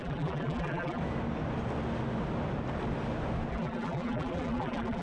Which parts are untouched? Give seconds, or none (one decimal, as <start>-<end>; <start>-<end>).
1.0-3.5